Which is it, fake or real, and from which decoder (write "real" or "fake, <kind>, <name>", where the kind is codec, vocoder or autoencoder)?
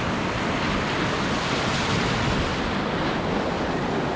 real